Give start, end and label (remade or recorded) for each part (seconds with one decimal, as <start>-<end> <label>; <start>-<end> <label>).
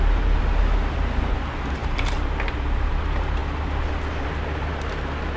0.0-1.8 recorded; 1.8-3.0 remade; 3.0-5.4 recorded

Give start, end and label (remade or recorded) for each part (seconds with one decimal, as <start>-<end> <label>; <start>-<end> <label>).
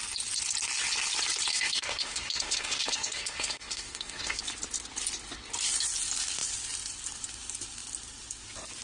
0.0-1.5 recorded; 1.5-4.4 remade; 4.4-8.8 recorded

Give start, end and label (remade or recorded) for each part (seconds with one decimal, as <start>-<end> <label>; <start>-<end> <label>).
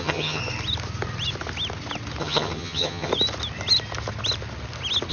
0.0-0.4 remade; 0.4-2.2 recorded; 2.2-3.1 remade; 3.1-5.1 recorded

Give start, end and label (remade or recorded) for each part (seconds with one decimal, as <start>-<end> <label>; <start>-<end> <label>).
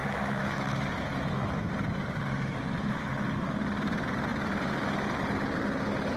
0.0-0.7 remade; 0.7-1.1 recorded; 1.1-1.7 remade; 1.7-6.2 recorded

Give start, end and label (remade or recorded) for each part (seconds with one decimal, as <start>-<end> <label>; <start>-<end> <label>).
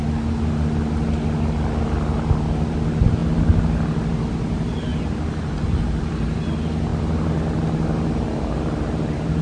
0.0-9.4 recorded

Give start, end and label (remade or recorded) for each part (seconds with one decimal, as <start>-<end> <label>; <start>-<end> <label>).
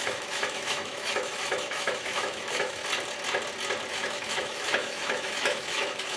0.0-2.8 remade; 2.8-3.9 recorded; 3.9-6.2 remade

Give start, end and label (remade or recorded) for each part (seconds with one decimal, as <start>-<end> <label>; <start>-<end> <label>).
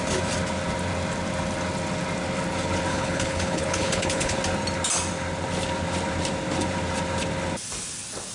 0.0-2.9 recorded; 2.9-4.4 remade; 4.4-8.3 recorded